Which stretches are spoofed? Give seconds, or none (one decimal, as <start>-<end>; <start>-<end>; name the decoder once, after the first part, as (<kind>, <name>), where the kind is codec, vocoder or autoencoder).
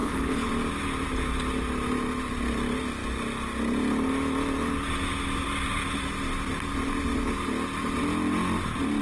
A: 0.0-0.5 (codec, HILCodec)